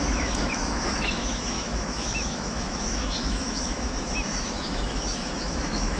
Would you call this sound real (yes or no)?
no